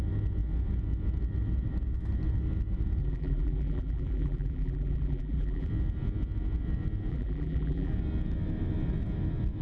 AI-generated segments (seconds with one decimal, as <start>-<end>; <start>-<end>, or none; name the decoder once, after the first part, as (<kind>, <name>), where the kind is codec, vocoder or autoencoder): 3.0-5.7 (vocoder, BigVGAN v2); 7.1-7.9